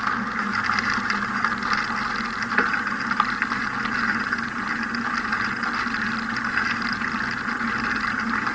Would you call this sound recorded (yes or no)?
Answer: yes